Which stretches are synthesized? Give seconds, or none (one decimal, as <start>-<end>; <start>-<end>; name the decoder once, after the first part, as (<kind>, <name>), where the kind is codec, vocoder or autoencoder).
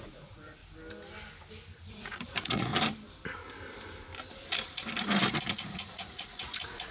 0.0-0.6 (vocoder, Vocos); 1.9-2.7; 5.5-6.9